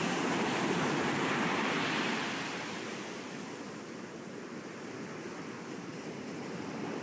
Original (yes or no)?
no